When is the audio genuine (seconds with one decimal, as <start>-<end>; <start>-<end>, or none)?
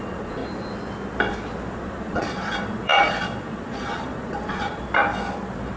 0.4-1.7; 4.8-5.8